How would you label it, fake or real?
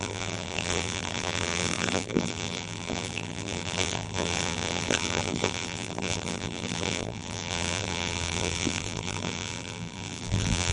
fake